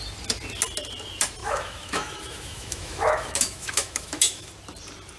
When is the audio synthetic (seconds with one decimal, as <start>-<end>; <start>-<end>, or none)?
1.4-4.5